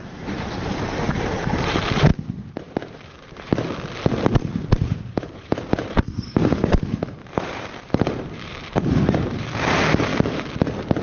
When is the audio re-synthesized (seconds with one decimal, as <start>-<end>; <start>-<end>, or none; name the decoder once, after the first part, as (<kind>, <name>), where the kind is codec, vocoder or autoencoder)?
0.0-2.1 (vocoder, BigVGAN v2); 2.6-3.5; 4.9-10.1